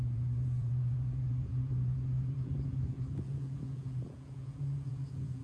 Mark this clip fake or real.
fake